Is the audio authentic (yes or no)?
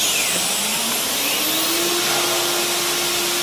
yes